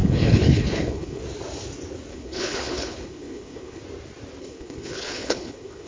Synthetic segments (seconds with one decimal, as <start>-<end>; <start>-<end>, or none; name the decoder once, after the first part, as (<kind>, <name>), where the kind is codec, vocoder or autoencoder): 0.0-1.2 (codec, HILCodec); 2.1-3.8; 4.4-5.9